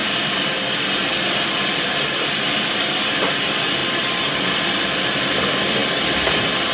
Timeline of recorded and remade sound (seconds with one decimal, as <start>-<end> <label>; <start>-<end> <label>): 0.0-3.8 recorded; 3.8-4.6 remade; 4.6-5.8 recorded; 5.8-6.7 remade